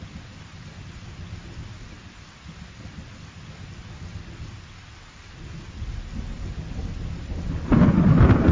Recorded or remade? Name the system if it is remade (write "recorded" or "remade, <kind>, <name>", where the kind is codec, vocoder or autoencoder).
recorded